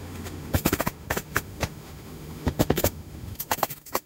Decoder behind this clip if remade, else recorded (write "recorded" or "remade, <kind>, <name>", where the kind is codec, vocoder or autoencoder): remade, autoencoder, DAC-VAE